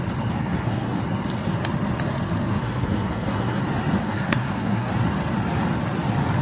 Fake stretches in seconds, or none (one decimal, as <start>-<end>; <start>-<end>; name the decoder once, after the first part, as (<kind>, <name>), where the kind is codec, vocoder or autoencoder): 0.4-1.0 (codec, SNAC); 2.5-3.6; 4.0-4.9